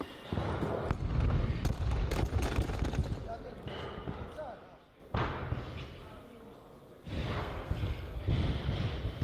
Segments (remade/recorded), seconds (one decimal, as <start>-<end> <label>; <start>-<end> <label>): 0.0-7.4 recorded; 7.4-8.2 remade; 8.2-9.2 recorded

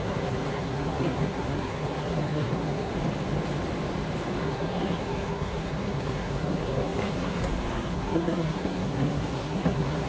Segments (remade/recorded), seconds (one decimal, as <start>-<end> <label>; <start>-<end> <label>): 0.0-2.9 remade; 2.9-4.4 recorded; 4.4-10.1 remade